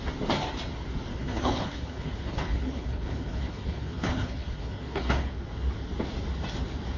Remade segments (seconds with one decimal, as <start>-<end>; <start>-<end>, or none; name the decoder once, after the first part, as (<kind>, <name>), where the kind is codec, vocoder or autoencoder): 1.1-5.3 (codec, HILCodec)